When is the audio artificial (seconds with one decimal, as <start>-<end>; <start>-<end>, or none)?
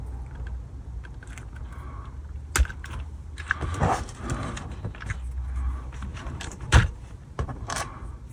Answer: 6.1-7.9